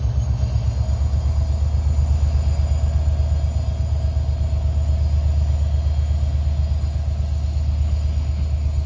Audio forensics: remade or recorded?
recorded